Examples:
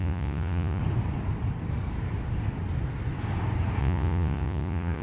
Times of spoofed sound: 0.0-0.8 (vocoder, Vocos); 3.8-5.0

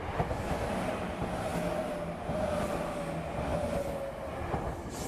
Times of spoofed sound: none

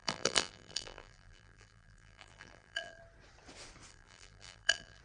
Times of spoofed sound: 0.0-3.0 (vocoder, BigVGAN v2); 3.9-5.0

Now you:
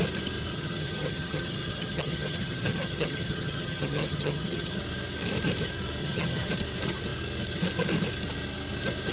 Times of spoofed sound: 0.5-4.8 (vocoder, HiFi-GAN); 6.0-6.5

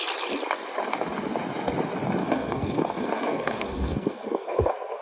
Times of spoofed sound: 2.2-5.0 (codec, SNAC)

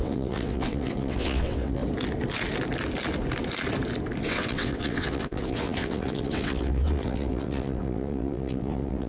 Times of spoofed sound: 0.0-1.8 (vocoder, WaveNeXt); 4.2-9.1

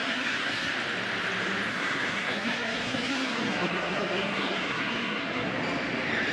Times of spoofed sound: 0.0-0.7 (codec, SNAC); 1.7-5.5

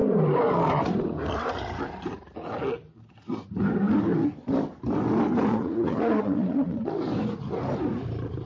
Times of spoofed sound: 5.5-6.9 (vocoder, Vocos)